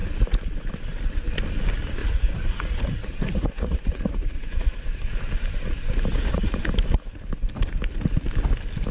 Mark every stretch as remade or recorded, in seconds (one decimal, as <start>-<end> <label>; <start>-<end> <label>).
0.0-2.0 recorded; 2.0-5.0 remade; 5.0-6.1 recorded; 6.1-6.6 remade; 6.6-8.9 recorded